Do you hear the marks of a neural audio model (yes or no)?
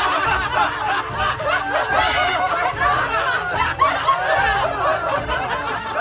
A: no